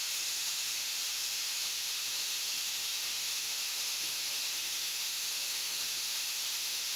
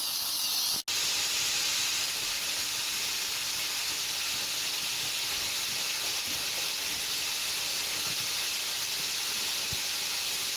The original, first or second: second